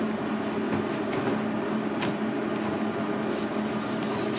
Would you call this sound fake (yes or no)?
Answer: no